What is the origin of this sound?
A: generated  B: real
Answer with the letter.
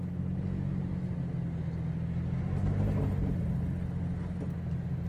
B